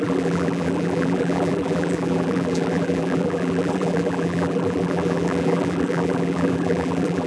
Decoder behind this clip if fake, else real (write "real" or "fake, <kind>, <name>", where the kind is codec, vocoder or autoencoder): fake, vocoder, BigVGAN v2